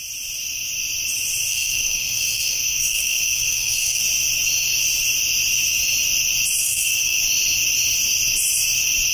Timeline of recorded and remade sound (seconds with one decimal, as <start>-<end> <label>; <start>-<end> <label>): 0.0-1.5 recorded; 1.5-4.0 remade; 4.0-6.6 recorded; 6.6-7.2 remade; 7.2-9.1 recorded

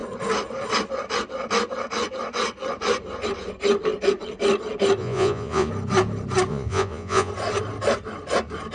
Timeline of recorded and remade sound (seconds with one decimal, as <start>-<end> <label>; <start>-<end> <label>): 0.0-5.0 recorded; 5.0-5.7 remade; 5.7-6.5 recorded; 6.5-7.3 remade; 7.3-8.7 recorded